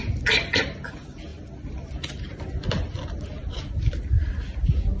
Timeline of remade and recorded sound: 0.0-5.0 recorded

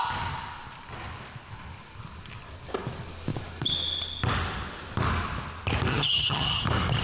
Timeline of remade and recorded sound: 0.0-5.9 recorded; 5.9-6.6 remade; 6.6-7.0 recorded